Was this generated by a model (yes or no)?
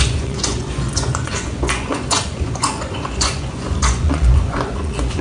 yes